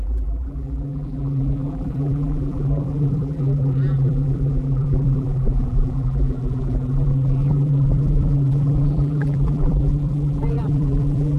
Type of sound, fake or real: fake